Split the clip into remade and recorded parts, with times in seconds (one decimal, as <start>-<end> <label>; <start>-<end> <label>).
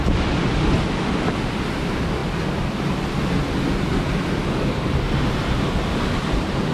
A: 0.0-6.7 recorded